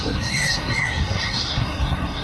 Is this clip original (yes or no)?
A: no